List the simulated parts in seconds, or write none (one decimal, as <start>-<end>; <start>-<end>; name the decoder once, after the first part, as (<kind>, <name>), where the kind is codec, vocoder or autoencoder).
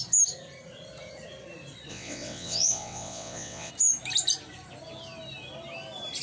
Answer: 1.9-3.7 (vocoder, WaveNeXt)